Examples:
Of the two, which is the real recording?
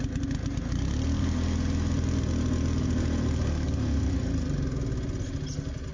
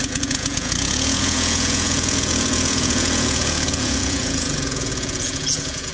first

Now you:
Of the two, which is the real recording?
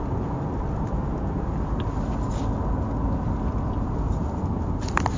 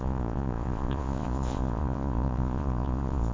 first